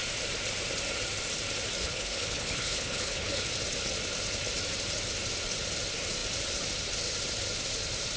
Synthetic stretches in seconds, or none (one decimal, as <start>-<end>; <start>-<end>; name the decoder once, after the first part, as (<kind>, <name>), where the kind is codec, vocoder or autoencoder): 1.8-3.5 (codec, HILCodec)